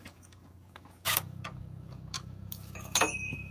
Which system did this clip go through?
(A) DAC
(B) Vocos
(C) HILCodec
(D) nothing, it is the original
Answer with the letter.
A